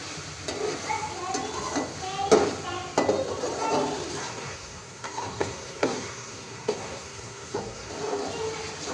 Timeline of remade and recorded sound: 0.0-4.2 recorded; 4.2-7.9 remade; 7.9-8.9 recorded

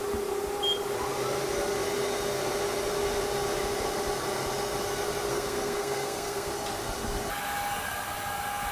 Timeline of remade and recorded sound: 0.0-5.3 recorded; 5.3-6.5 remade; 6.5-8.7 recorded

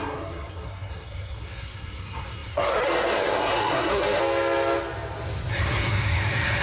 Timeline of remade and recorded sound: 0.0-4.2 remade; 4.2-5.5 recorded; 5.5-6.6 remade

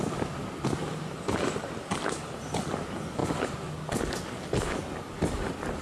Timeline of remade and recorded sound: 0.0-5.8 recorded

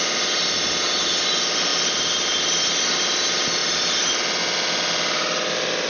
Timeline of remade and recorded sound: 0.0-5.9 recorded

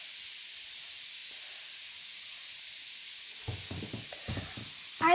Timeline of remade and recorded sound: 0.0-5.1 recorded

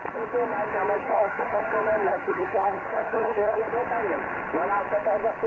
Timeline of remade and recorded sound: 0.0-1.0 recorded; 1.0-1.7 remade; 1.7-2.1 recorded; 2.1-3.6 remade; 3.6-5.5 recorded